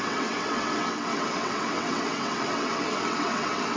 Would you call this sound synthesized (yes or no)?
yes